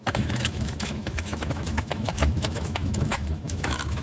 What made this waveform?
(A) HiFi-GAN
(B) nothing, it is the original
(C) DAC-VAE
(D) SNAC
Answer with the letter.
C